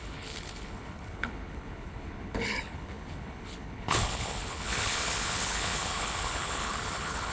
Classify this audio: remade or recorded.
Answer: remade